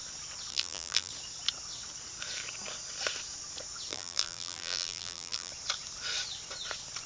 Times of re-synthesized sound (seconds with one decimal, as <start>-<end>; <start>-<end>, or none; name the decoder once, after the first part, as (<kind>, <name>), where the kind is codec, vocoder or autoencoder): 0.5-1.1 (vocoder, BigVGAN v2); 3.9-5.5